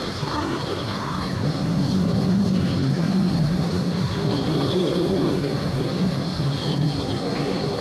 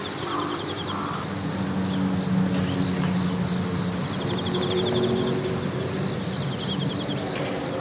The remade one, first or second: first